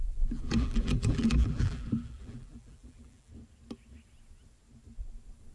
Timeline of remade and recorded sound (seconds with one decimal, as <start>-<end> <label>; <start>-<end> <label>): 0.0-3.3 remade; 3.3-5.5 recorded